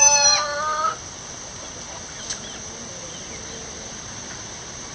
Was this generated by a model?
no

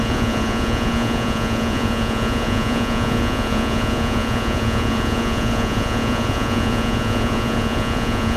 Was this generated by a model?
yes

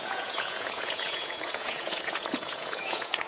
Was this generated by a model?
yes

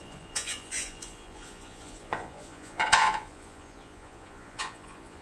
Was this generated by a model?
yes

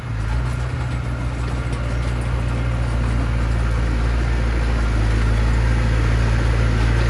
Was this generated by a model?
no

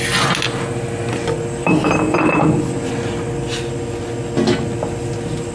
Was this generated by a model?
no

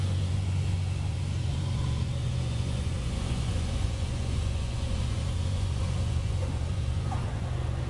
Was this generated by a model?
yes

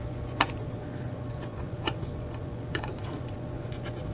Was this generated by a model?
yes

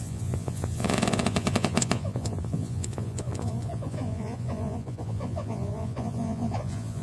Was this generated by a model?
yes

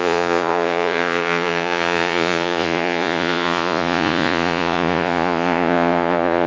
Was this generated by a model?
yes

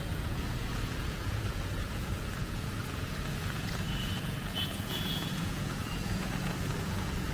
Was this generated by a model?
yes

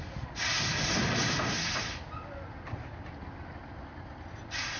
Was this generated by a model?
no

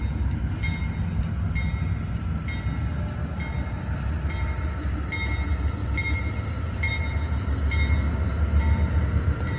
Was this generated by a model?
no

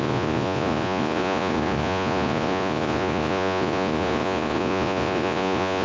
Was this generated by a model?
yes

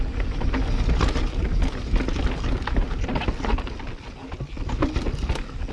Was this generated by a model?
no